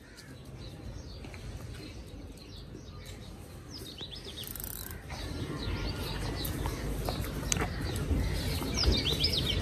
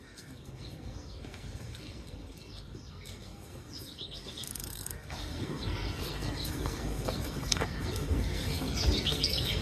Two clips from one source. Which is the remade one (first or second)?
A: second